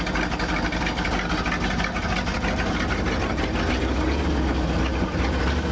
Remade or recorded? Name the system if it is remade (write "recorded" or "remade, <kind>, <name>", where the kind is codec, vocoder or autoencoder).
recorded